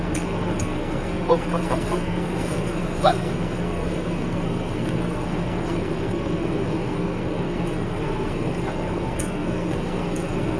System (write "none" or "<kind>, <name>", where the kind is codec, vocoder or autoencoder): codec, SNAC